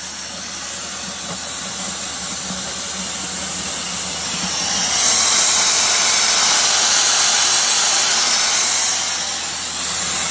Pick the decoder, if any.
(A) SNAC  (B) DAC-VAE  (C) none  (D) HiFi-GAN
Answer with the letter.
C